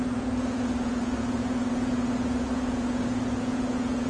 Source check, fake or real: fake